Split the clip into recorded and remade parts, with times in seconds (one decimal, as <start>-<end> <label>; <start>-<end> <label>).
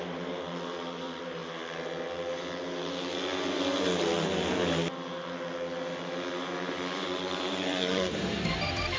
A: 0.0-1.4 remade; 1.4-6.4 recorded; 6.4-9.0 remade